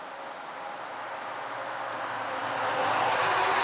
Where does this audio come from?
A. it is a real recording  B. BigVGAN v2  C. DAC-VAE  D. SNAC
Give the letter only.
A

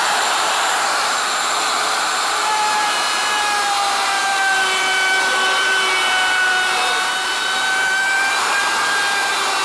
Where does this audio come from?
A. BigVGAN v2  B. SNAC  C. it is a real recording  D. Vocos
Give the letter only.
A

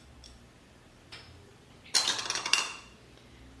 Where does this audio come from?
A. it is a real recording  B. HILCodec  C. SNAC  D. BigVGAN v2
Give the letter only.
A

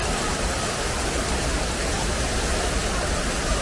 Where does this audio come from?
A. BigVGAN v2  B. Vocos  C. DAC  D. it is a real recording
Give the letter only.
D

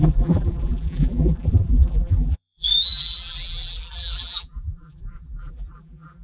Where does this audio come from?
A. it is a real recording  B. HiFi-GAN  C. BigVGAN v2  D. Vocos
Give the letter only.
C